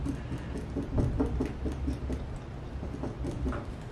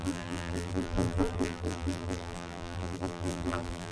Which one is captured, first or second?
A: first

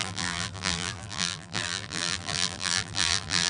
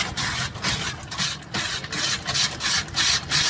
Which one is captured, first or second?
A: second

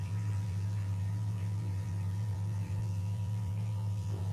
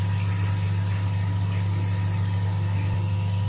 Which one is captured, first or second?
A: second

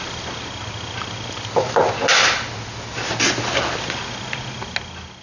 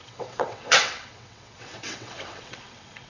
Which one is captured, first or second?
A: first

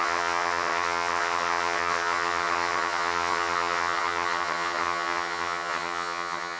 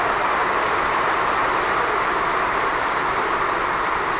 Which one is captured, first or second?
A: second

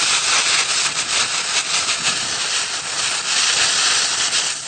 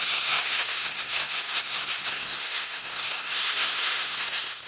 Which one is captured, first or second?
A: first